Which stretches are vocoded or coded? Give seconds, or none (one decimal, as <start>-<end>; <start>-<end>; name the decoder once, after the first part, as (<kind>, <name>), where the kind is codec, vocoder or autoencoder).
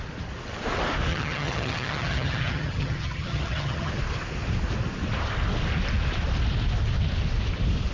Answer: 1.1-3.9 (vocoder, HiFi-GAN)